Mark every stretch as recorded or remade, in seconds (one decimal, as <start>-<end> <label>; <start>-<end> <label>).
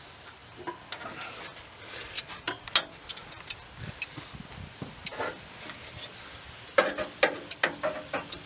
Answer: 0.0-8.5 recorded